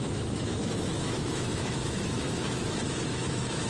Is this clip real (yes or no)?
no